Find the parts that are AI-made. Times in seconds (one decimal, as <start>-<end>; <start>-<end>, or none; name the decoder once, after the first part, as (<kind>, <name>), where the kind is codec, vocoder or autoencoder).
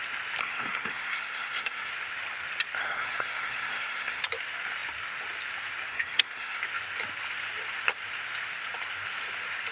0.4-1.9 (codec, SNAC); 2.8-4.2; 5.9-6.6